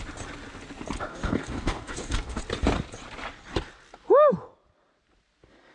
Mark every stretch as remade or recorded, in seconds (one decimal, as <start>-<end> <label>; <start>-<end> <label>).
0.0-1.1 recorded; 1.1-2.4 remade; 2.4-5.7 recorded